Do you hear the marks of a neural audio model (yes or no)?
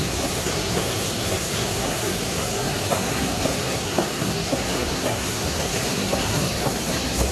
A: yes